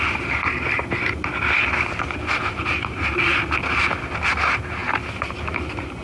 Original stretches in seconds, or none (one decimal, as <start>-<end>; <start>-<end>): 0.0-6.0